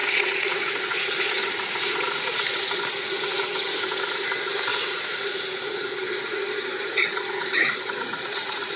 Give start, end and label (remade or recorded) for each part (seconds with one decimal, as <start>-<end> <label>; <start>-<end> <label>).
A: 0.0-4.3 remade; 4.3-4.7 recorded; 4.7-8.8 remade